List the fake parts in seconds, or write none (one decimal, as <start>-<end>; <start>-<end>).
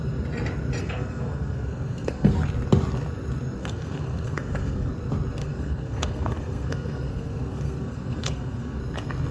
0.8-2.3; 3.6-4.9; 5.4-8.8